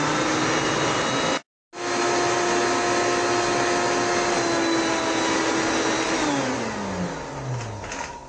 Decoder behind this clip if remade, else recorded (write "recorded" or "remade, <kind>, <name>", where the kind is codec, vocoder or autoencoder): recorded